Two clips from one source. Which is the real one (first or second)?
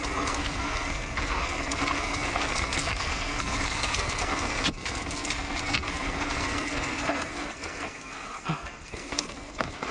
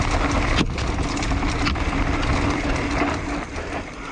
second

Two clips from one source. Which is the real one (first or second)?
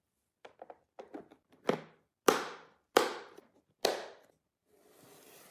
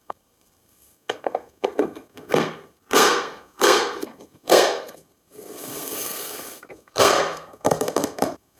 first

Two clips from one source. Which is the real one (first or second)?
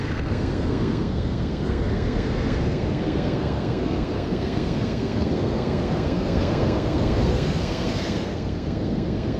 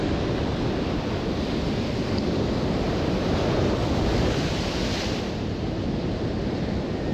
second